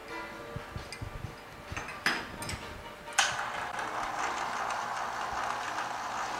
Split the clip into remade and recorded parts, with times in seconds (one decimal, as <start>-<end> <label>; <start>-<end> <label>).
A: 0.0-6.4 recorded